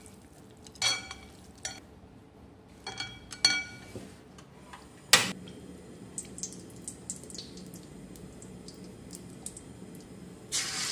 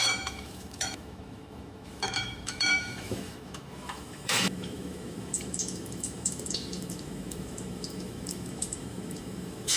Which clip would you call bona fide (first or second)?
first